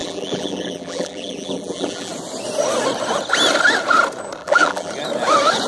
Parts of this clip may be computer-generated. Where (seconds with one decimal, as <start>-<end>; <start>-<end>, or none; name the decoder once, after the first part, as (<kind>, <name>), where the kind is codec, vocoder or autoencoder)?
0.0-2.1 (vocoder, BigVGAN v2); 4.4-4.9